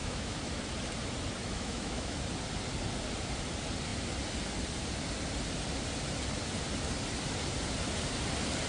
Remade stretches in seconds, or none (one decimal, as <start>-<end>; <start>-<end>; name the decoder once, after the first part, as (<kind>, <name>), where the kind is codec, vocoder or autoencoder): 0.0-0.6 (autoencoder, DAC-VAE); 1.4-2.2